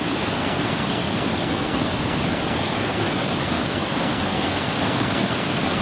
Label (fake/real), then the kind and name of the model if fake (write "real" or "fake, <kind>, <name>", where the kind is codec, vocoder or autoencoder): fake, codec, SNAC